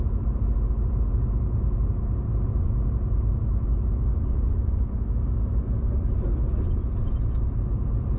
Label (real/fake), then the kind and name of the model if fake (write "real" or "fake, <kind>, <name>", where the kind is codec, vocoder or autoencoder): real